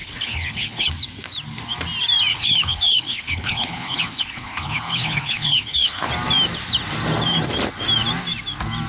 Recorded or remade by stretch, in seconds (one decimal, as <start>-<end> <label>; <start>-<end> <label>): 0.0-0.9 remade; 0.9-2.3 recorded; 2.3-6.1 remade; 6.1-8.9 recorded